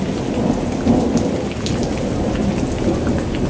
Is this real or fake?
real